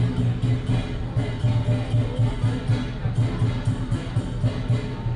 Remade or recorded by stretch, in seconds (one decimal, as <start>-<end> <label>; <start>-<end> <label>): 0.0-5.2 recorded